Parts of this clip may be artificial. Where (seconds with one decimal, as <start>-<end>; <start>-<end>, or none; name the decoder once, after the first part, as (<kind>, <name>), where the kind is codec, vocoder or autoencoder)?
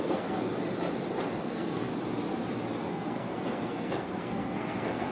0.0-0.5 (codec, SNAC); 1.4-1.9; 2.8-5.1